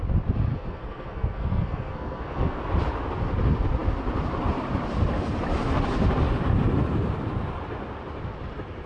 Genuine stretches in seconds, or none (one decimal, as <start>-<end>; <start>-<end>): 0.0-0.5; 2.6-8.9